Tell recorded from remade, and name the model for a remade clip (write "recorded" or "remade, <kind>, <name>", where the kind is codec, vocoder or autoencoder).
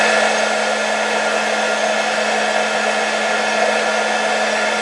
recorded